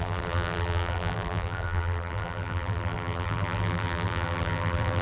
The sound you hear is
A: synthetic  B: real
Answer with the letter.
A